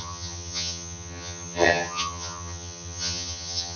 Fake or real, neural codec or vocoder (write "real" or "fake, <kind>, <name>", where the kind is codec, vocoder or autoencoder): fake, vocoder, HiFi-GAN